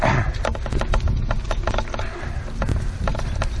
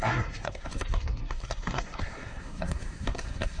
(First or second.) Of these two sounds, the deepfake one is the second